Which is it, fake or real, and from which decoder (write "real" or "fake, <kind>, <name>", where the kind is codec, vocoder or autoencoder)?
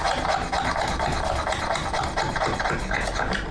real